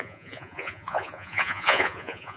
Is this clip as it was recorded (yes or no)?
no